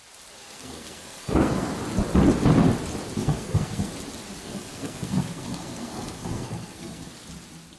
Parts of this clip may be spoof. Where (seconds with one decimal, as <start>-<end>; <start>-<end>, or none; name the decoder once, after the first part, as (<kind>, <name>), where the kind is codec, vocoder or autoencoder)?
0.4-1.7 (codec, SNAC); 3.2-3.9; 4.4-7.1